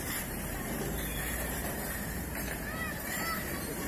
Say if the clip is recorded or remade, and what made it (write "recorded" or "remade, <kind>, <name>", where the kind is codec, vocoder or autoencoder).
remade, vocoder, BigVGAN v2